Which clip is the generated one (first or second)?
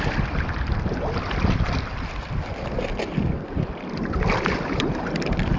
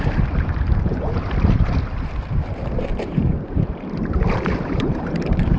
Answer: second